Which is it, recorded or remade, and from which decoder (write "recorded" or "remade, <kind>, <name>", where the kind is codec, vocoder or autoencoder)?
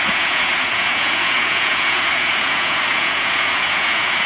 remade, vocoder, Vocos